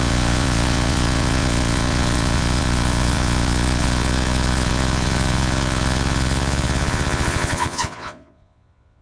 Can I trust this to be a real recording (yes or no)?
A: no